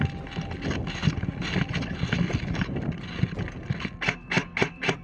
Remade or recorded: recorded